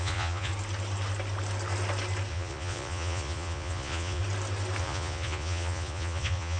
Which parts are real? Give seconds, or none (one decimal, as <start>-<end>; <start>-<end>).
0.5-2.3; 4.2-4.8